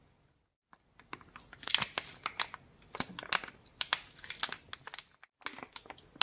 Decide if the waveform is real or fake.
real